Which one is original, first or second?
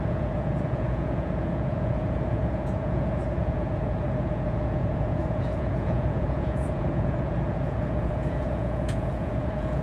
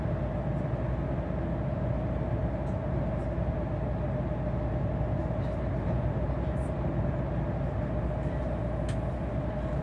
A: second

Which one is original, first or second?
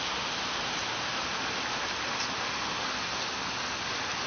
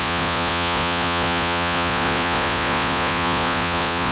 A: first